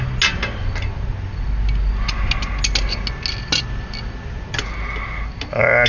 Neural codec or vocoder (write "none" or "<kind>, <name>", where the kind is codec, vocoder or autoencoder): none